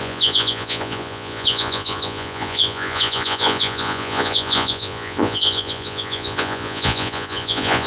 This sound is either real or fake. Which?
fake